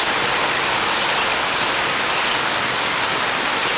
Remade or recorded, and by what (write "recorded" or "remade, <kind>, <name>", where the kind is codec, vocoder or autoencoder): recorded